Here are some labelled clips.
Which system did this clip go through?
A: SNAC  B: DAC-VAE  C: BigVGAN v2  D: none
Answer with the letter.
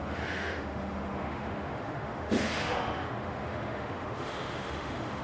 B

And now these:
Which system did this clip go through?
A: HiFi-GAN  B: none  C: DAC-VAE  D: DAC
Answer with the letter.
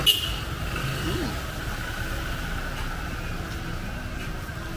B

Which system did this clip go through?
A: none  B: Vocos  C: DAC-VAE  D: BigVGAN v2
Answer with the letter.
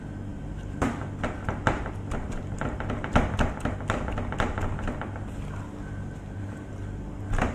A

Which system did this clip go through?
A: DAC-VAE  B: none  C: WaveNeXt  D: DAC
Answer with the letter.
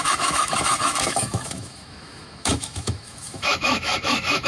A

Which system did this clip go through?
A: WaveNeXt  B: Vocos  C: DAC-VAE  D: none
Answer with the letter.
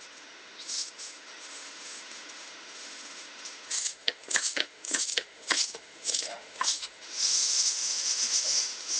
C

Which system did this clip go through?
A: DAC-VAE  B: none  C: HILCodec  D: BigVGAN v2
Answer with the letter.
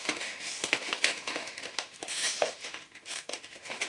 A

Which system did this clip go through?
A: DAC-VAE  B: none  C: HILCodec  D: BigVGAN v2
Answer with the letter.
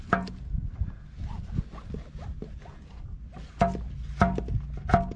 B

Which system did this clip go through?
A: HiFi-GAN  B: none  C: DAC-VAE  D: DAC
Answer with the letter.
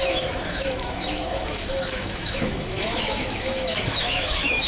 C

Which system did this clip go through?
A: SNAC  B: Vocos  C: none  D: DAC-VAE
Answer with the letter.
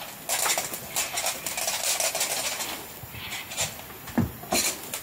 C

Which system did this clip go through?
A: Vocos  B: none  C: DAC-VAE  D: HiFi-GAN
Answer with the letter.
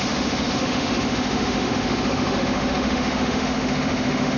C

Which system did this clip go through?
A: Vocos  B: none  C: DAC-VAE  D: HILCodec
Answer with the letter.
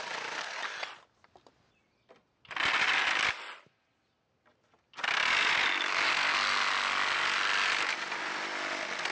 B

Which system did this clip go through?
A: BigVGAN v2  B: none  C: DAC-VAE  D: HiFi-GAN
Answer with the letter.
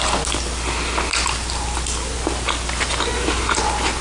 B